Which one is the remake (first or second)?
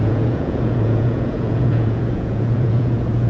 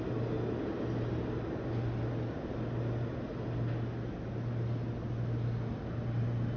first